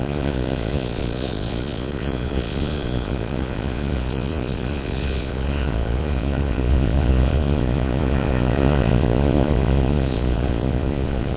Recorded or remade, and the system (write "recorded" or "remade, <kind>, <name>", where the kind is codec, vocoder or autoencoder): remade, vocoder, Vocos